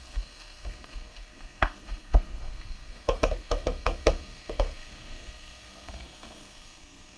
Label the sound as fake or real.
fake